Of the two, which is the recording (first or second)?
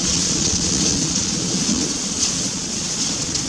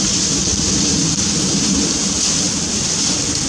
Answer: second